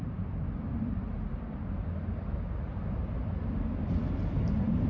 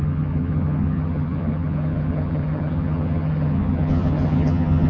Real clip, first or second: first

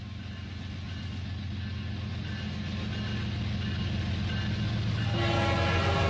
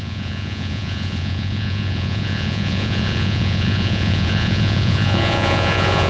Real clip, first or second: first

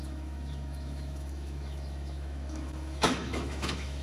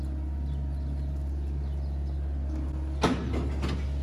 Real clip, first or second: second